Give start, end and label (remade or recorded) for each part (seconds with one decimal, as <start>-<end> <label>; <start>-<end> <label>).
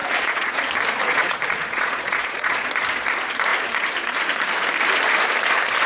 0.0-0.6 remade; 0.6-1.0 recorded; 1.0-2.7 remade; 2.7-5.9 recorded